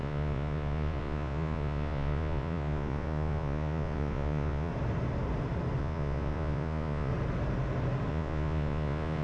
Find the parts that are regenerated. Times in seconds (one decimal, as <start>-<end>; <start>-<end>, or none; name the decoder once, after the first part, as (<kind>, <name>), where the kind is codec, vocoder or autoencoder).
0.0-4.7 (vocoder, Vocos); 5.8-7.1; 8.1-9.2